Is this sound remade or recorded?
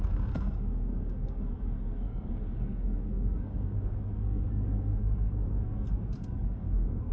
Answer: remade